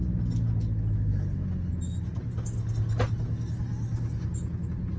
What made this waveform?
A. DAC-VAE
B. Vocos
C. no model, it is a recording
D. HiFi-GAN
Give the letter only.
C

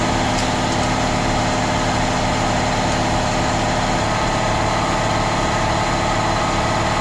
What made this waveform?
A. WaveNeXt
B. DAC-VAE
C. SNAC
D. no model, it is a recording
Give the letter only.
D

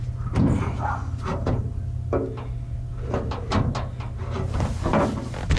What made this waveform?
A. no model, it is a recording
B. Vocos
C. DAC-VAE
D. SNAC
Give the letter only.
A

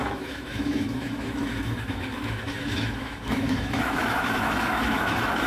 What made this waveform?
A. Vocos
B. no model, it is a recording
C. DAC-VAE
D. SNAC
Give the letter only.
C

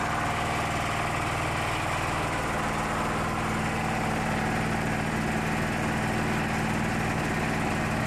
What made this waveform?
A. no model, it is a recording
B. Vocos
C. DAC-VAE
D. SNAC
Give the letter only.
A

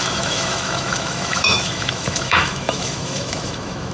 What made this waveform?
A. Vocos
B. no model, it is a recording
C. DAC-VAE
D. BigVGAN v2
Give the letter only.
C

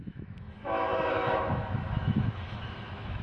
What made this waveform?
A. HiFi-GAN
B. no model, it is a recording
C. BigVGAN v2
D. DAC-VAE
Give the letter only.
D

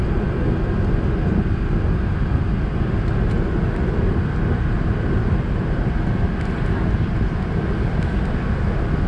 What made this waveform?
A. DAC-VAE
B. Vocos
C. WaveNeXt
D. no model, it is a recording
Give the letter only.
D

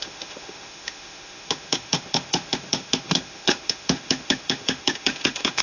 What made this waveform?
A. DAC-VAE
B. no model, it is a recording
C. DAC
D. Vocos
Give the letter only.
A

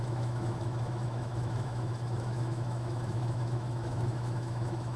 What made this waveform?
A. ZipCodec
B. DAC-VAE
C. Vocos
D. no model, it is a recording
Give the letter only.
B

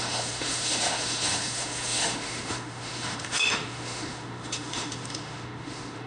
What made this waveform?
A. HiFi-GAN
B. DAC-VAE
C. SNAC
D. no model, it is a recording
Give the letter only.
B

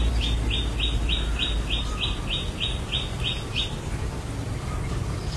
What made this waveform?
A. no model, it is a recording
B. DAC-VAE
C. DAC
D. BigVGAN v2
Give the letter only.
A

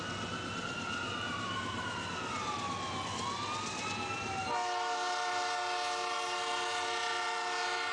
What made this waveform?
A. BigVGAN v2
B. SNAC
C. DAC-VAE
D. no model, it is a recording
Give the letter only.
D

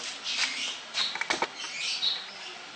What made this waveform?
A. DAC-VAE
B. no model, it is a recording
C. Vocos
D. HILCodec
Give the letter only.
B